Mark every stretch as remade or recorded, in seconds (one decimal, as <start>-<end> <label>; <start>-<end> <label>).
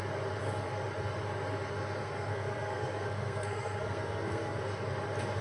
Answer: 0.0-2.0 recorded; 2.0-4.6 remade; 4.6-5.4 recorded